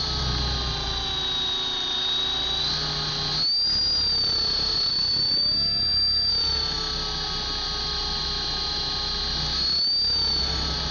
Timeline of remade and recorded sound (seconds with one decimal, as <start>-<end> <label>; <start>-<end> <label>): 0.0-4.9 recorded; 4.9-6.3 remade; 6.3-10.9 recorded